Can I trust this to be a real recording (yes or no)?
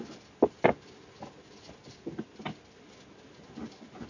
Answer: yes